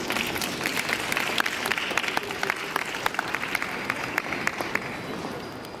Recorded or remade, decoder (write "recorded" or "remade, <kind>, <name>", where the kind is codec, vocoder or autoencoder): recorded